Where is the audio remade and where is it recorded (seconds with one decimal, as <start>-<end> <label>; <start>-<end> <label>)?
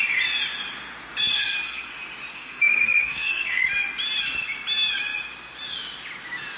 0.0-1.3 recorded; 1.3-1.9 remade; 1.9-2.3 recorded; 2.3-3.6 remade; 3.6-6.6 recorded